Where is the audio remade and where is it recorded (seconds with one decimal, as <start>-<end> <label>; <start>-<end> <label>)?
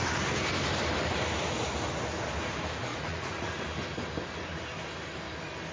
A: 0.0-2.9 recorded; 2.9-3.6 remade; 3.6-5.7 recorded